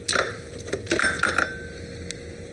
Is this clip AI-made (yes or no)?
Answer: no